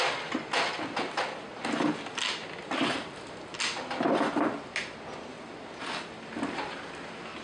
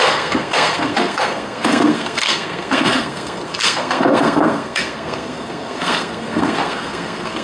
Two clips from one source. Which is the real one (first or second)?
first